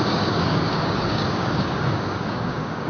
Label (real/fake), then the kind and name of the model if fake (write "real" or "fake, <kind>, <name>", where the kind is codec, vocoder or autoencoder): fake, codec, DAC